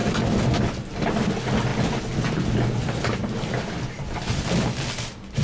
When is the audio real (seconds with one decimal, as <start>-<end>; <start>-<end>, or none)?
0.0-5.4